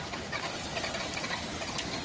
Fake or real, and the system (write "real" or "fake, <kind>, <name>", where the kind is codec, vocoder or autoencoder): real